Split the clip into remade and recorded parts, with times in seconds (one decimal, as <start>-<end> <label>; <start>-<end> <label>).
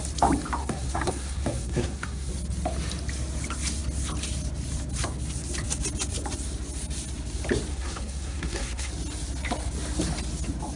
0.0-0.6 recorded; 0.6-2.3 remade; 2.3-7.7 recorded; 7.7-8.9 remade; 8.9-10.8 recorded